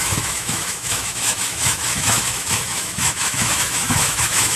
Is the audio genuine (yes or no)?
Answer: no